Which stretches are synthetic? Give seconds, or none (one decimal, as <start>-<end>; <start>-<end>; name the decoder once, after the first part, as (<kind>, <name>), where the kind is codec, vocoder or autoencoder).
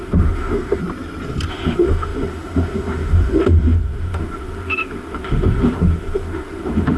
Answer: 0.0-0.8 (autoencoder, DAC-VAE); 1.5-7.0